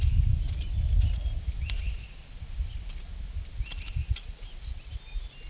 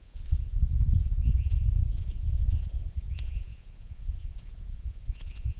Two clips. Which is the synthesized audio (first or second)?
second